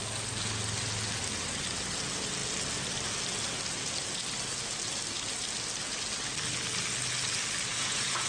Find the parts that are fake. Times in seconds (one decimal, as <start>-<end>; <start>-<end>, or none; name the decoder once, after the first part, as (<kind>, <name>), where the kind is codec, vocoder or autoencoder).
7.7-8.3 (vocoder, Vocos)